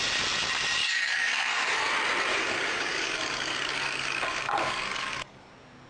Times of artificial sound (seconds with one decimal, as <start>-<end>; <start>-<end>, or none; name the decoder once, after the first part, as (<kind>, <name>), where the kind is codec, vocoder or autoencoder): 0.8-1.9 (codec, DAC); 2.3-5.5